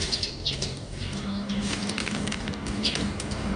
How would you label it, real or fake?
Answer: fake